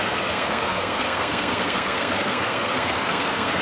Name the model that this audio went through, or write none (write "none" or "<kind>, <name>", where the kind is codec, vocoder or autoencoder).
codec, SNAC